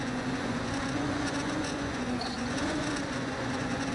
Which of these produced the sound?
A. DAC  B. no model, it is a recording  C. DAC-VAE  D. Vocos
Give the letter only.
D